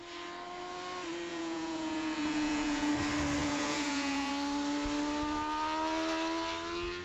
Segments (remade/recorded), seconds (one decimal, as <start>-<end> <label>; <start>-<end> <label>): 0.0-1.3 recorded; 1.3-2.9 remade; 2.9-3.4 recorded; 3.4-4.3 remade; 4.3-7.0 recorded